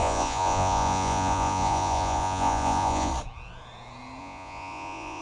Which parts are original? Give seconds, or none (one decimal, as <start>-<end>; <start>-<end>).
3.1-4.2